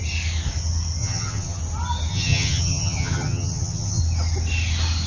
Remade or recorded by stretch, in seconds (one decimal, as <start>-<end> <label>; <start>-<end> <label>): 0.0-1.0 recorded; 1.0-1.6 remade; 1.6-2.1 recorded; 2.1-4.0 remade; 4.0-5.1 recorded